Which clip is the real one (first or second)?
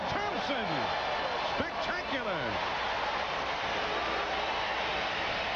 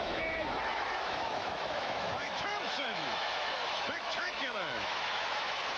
first